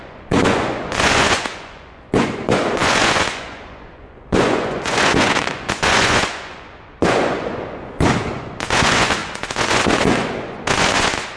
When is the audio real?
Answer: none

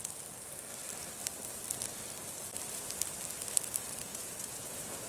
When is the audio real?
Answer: 0.0-4.1

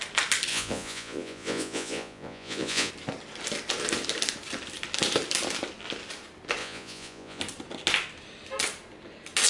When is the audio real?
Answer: 0.0-0.5; 2.9-6.6; 7.4-9.5